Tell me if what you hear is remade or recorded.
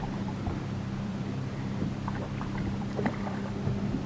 remade